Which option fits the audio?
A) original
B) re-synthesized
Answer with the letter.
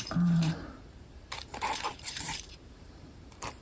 B